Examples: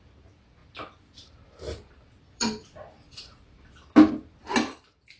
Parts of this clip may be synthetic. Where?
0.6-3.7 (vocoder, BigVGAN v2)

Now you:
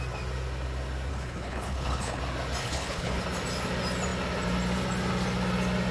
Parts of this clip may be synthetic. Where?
1.1-2.2 (codec, HILCodec); 2.6-3.2

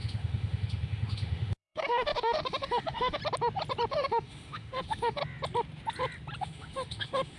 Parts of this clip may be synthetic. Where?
0.0-3.2 (autoencoder, DAC-VAE); 3.9-5.2; 6.4-7.4

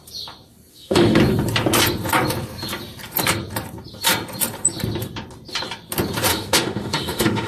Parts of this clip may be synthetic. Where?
0.7-1.2 (autoencoder, DAC-VAE); 6.3-7.5

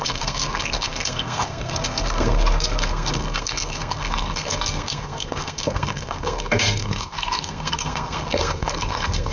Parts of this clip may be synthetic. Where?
0.0-9.3 (codec, SNAC)

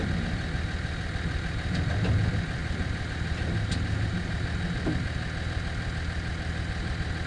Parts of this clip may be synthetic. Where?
none